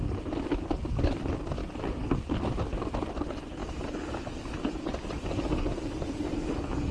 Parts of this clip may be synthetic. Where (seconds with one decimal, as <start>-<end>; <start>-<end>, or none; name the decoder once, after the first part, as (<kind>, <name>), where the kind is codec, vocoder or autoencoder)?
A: none